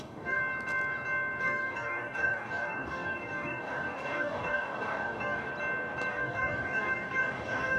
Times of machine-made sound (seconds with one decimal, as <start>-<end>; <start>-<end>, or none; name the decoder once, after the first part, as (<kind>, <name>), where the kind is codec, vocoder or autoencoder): 0.0-0.4 (codec, DAC); 1.4-5.5; 6.1-7.8